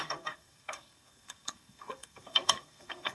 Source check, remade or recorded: remade